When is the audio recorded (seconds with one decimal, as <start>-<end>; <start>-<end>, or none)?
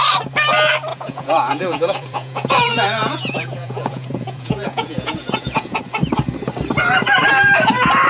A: 0.0-0.9; 5.8-8.1